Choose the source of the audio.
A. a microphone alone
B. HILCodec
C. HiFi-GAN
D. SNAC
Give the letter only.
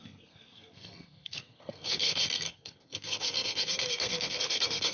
D